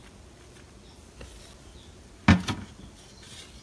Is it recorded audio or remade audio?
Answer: recorded